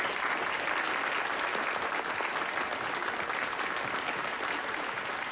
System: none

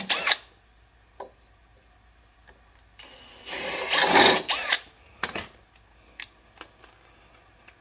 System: none